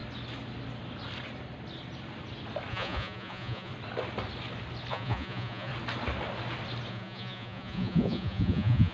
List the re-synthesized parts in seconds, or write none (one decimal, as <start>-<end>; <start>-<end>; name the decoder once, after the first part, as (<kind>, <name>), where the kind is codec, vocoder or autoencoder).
2.7-3.7 (vocoder, Vocos); 4.9-5.7; 6.9-8.9